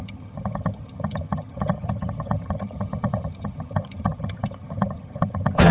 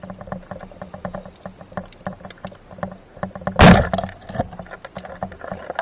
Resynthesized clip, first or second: first